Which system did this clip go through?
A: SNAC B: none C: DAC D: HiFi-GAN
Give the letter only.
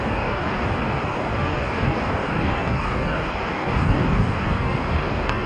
C